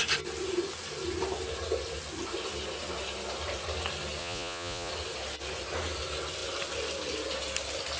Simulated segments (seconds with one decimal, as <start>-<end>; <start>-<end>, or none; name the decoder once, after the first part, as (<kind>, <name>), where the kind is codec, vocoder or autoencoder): 4.2-4.9 (vocoder, Vocos)